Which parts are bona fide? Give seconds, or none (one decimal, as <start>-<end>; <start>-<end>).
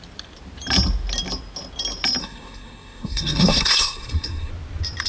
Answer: 0.0-2.2; 4.5-5.1